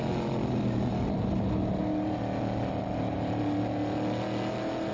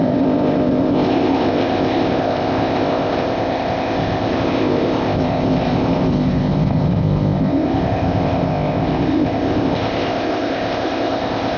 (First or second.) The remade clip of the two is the second